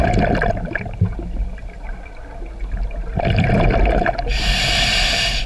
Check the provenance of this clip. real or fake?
real